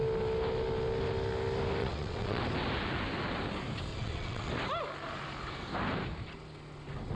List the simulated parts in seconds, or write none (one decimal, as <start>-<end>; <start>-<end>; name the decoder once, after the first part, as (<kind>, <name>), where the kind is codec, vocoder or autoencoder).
1.8-2.4 (vocoder, WaveNeXt); 3.9-4.5